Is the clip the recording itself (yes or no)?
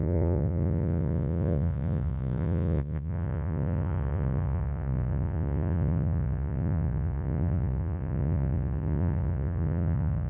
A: no